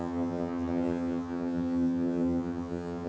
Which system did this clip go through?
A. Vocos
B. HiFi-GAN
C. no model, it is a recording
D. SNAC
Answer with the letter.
B